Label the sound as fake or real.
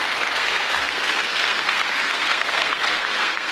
fake